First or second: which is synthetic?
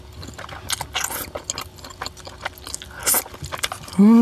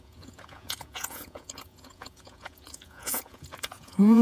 second